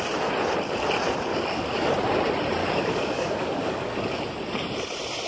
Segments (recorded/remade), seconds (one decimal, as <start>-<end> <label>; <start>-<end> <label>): 0.0-1.3 recorded; 1.3-1.9 remade; 1.9-2.6 recorded; 2.6-4.2 remade; 4.2-5.3 recorded

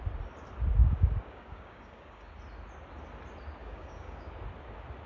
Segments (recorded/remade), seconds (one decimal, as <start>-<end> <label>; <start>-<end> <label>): 0.0-0.8 recorded; 0.8-2.3 remade; 2.3-3.6 recorded; 3.6-4.3 remade; 4.3-5.1 recorded

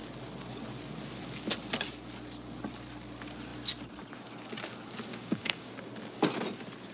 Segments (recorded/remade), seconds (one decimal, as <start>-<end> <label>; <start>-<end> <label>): 0.0-5.1 recorded; 5.1-5.7 remade; 5.7-6.9 recorded